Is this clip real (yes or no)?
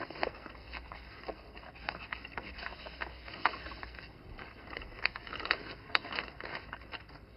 no